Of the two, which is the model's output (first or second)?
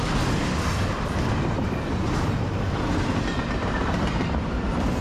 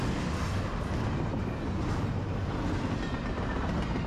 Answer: first